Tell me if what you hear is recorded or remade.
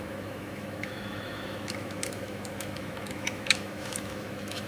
remade